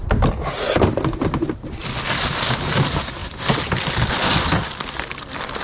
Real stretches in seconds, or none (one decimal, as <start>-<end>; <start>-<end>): 0.0-5.6

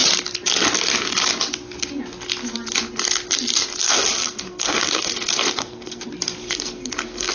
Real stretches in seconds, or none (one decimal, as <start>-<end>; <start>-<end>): 0.0-3.8; 6.0-6.4

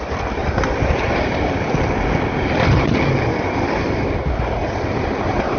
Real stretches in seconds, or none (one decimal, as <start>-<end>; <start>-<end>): 0.0-5.6

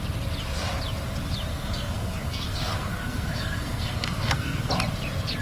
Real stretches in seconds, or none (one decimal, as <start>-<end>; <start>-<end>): 0.0-1.5; 4.7-5.4

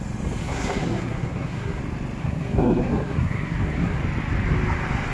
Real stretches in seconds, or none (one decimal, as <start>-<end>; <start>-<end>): 0.0-0.4; 1.8-2.2; 4.0-5.1